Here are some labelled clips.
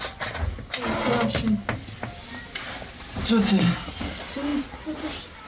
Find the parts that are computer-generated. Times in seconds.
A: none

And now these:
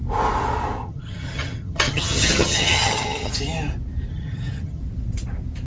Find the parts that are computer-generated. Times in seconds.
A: 0.8-3.3 (vocoder, HiFi-GAN); 4.1-4.8

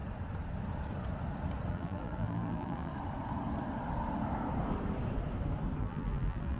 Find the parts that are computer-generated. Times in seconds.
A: 1.7-2.9 (vocoder, BigVGAN v2); 5.8-6.6

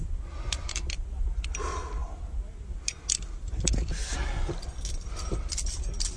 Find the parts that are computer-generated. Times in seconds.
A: none